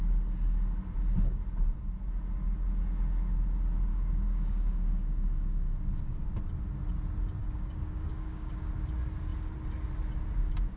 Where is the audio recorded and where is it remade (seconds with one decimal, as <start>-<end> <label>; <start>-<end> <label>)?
0.0-3.9 recorded; 3.9-6.0 remade; 6.0-7.4 recorded; 7.4-8.5 remade; 8.5-10.8 recorded